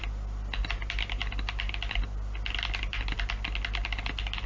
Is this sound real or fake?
real